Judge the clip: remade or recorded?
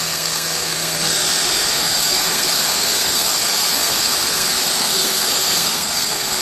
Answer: remade